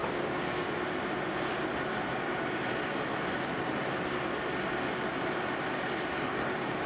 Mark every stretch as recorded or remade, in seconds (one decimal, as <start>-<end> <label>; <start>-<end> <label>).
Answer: 0.0-3.8 remade; 3.8-6.9 recorded